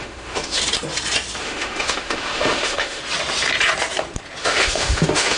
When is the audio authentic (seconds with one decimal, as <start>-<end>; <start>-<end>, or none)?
0.6-1.4; 3.0-4.4